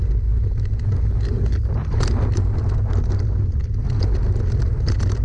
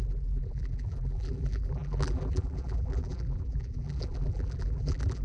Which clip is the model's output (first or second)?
second